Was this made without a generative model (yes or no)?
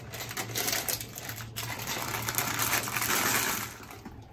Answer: yes